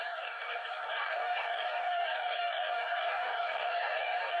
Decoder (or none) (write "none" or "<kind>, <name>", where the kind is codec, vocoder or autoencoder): codec, DAC